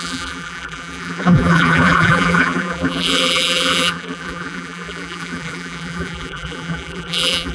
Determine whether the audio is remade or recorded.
remade